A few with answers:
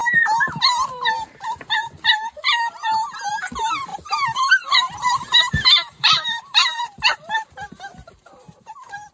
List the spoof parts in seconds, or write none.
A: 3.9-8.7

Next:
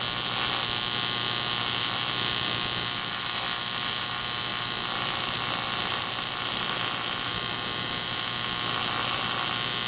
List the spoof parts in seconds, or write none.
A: none

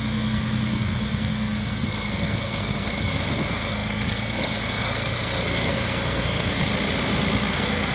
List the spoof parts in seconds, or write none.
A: 0.0-6.7; 7.5-7.9

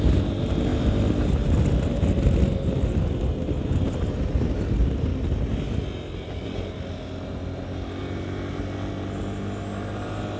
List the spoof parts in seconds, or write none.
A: none

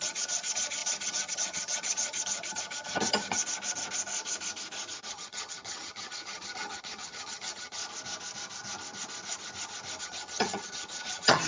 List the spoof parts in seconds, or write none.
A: 0.0-3.4; 5.1-7.8; 10.0-11.5